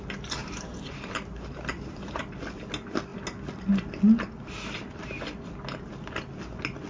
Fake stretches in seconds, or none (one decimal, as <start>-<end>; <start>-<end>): 0.4-2.2